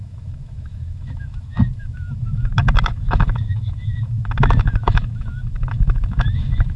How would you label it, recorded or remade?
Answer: remade